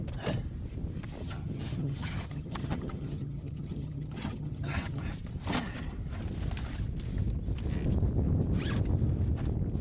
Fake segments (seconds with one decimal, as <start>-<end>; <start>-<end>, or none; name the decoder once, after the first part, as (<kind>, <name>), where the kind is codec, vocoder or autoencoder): 1.2-5.0 (vocoder, HiFi-GAN)